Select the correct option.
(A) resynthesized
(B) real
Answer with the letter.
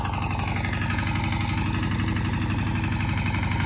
B